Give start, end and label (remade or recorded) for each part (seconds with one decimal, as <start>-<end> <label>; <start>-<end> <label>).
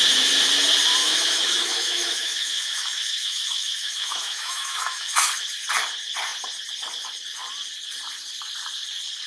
0.0-1.0 recorded; 1.0-5.3 remade; 5.3-9.3 recorded